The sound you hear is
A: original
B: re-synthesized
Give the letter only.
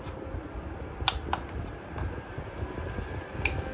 A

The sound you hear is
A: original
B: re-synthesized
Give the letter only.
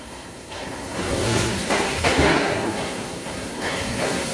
B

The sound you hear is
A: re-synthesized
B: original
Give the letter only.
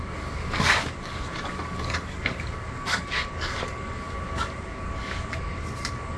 A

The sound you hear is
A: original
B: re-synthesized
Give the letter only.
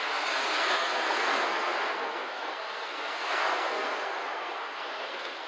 B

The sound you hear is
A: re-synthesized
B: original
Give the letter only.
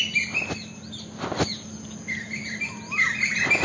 B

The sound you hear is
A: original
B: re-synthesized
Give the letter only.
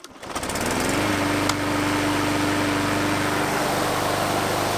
A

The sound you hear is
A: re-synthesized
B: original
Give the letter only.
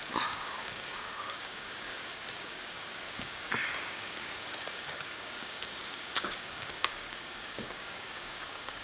A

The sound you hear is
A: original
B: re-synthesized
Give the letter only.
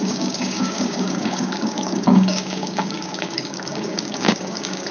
B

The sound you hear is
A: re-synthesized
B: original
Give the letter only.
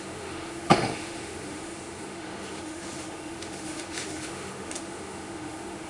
A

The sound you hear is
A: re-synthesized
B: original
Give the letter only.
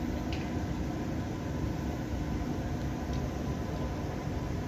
B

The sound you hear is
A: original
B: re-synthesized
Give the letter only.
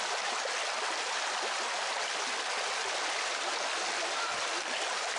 A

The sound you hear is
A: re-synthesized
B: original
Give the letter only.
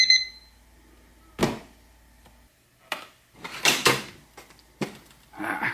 B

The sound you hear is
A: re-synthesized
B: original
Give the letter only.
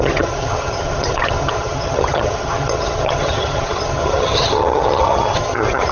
A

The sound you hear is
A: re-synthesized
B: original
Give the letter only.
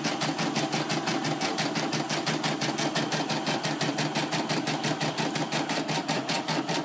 B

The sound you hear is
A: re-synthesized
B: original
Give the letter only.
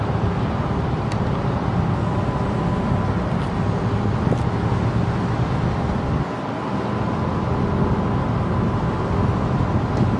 B